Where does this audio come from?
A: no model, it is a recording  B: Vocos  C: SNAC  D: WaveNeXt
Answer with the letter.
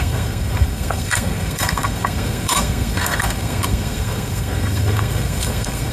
C